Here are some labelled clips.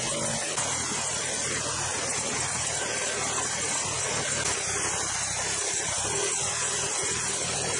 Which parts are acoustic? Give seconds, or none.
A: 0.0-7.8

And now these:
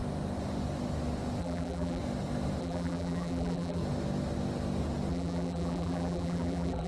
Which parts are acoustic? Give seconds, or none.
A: 0.0-1.4; 2.0-2.6; 3.8-5.1

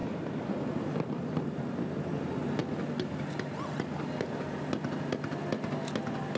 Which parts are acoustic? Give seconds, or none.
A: 0.0-6.4

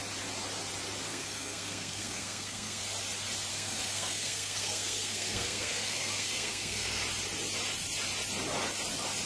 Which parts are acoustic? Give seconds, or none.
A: 0.0-1.1; 2.8-3.5; 7.0-9.3

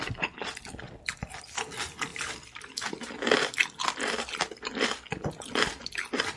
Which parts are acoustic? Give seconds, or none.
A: 0.0-6.4